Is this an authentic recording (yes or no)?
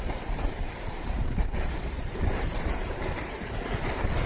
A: no